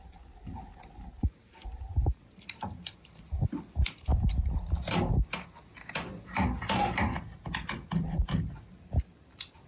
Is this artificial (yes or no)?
no